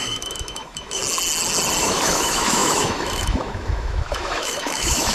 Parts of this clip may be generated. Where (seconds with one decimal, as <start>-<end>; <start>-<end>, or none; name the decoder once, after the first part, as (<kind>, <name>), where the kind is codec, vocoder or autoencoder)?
0.0-1.0 (autoencoder, DAC-VAE); 1.8-5.1